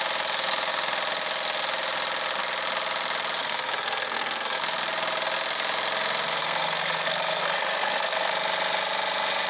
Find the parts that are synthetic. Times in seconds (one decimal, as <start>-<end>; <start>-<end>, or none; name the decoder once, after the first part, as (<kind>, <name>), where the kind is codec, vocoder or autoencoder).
3.4-4.6 (codec, SNAC); 6.4-8.3